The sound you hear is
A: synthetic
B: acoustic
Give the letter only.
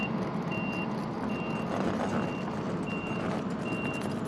B